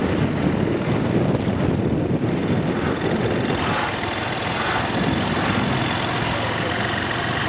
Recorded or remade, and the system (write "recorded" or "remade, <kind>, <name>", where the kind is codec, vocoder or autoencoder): recorded